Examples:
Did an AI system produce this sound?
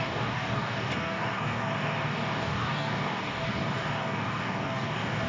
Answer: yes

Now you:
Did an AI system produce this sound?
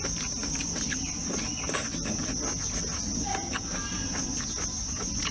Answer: no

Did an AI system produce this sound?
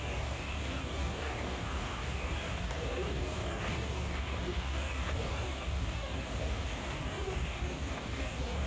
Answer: yes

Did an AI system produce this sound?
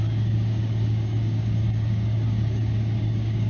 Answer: yes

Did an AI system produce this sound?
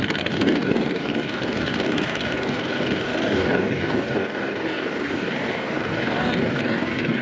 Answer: yes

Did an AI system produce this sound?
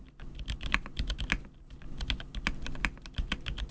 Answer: no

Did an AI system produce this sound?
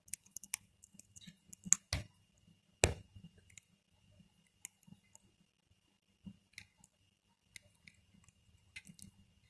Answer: no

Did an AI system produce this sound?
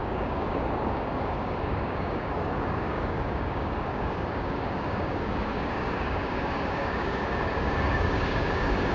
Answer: yes